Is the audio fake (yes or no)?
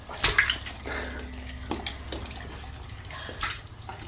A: no